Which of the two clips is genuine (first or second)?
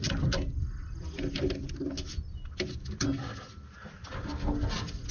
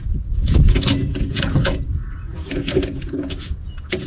first